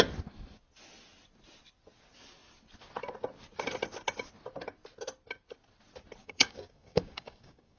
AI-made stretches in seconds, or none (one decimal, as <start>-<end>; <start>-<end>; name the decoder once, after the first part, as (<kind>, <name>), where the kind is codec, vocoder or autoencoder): 6.2-7.8 (codec, DAC)